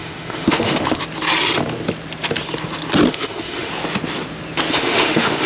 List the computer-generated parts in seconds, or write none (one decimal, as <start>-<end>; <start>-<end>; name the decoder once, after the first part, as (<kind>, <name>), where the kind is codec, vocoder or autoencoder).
0.0-1.0 (autoencoder, DAC-VAE); 3.1-3.7; 4.7-5.5